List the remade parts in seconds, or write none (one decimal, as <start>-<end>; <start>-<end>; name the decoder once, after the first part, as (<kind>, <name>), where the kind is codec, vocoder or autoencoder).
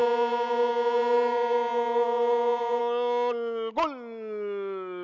0.0-2.8 (vocoder, Vocos)